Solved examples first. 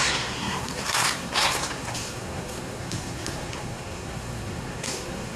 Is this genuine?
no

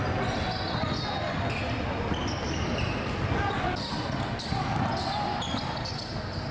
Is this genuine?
yes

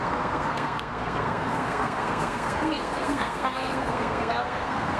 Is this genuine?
no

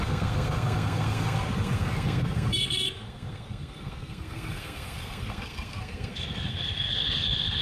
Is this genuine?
no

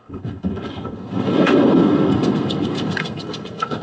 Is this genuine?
no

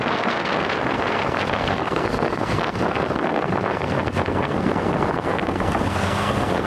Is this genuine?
no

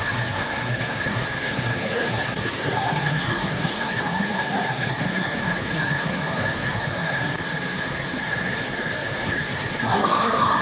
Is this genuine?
no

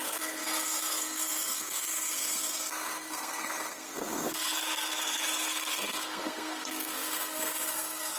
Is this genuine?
no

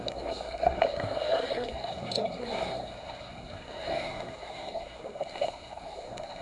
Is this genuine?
no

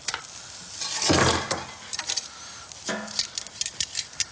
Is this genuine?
yes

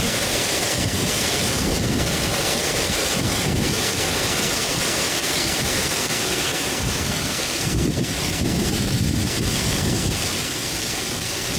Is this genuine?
no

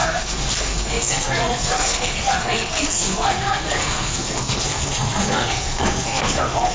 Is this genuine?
no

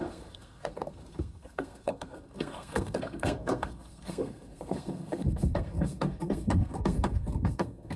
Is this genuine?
no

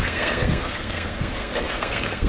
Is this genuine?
no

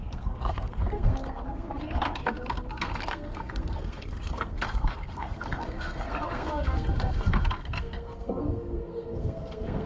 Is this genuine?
no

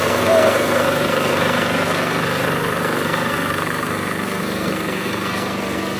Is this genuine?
no